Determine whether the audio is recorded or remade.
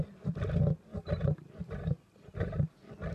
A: recorded